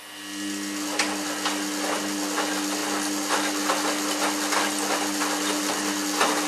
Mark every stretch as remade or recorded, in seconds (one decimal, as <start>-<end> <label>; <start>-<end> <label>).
0.0-6.5 recorded